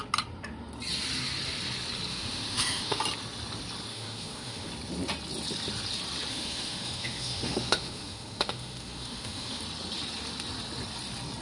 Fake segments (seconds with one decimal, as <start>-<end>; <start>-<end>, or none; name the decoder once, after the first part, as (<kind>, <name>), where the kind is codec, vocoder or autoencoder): 2.1-3.0 (autoencoder, DAC-VAE); 3.9-4.7; 6.3-9.6